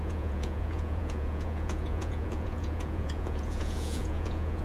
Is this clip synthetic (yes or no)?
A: yes